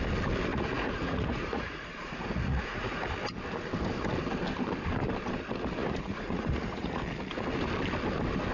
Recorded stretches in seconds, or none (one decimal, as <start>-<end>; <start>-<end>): 0.0-0.5; 3.1-5.8; 7.0-8.5